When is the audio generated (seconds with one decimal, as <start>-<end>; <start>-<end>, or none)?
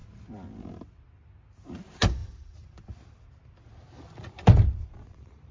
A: 2.2-5.5